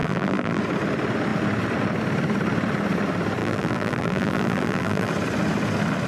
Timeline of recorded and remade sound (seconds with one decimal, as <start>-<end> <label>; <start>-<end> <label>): 0.0-0.6 remade; 0.6-3.4 recorded; 3.4-5.1 remade; 5.1-6.1 recorded